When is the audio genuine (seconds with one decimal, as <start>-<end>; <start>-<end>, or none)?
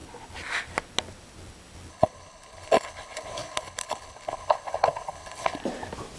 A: 0.0-1.9; 5.6-6.2